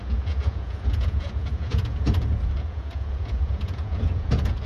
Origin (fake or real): fake